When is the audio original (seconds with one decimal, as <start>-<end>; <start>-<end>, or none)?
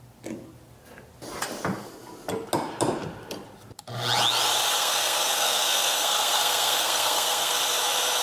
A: 0.0-4.8; 7.6-8.2